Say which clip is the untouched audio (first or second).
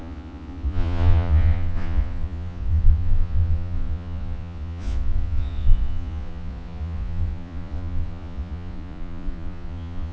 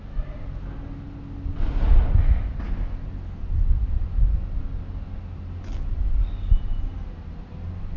second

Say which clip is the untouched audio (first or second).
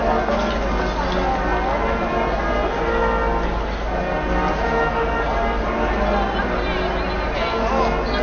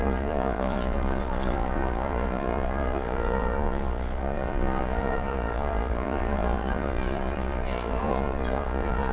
first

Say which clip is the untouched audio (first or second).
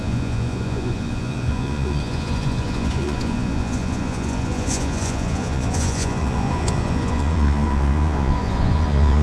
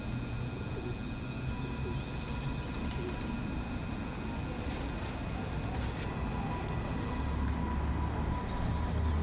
second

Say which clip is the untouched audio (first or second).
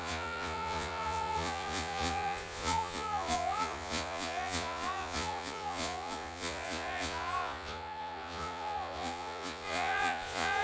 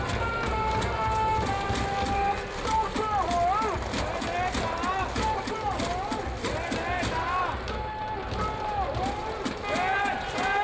second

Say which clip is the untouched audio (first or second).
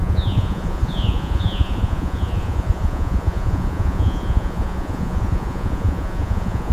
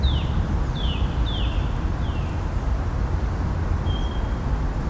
second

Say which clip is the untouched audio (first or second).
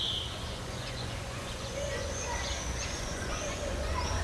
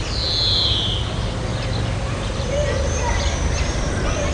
second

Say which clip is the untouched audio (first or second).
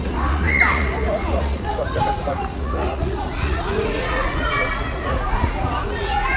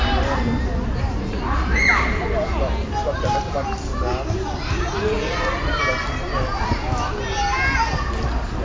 second